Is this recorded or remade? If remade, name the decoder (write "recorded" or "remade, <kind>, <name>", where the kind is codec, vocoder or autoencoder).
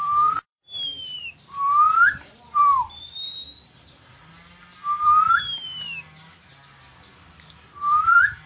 remade, vocoder, BigVGAN v2